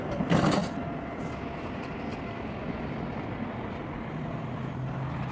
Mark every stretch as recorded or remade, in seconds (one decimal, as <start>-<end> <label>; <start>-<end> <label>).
0.0-0.6 recorded; 0.6-1.2 remade; 1.2-5.3 recorded